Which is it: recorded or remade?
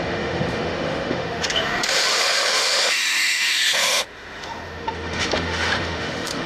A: remade